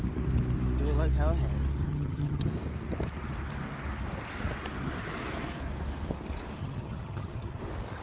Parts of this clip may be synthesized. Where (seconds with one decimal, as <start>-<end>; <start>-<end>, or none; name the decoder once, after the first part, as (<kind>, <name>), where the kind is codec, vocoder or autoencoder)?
1.8-2.5 (vocoder, HiFi-GAN); 6.6-7.6